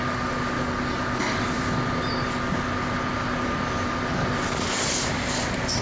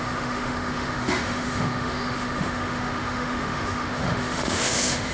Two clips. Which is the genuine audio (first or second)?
first